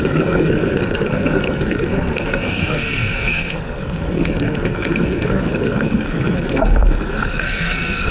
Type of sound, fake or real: fake